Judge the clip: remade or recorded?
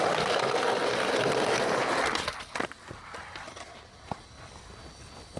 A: recorded